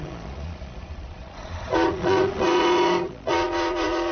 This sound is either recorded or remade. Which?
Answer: remade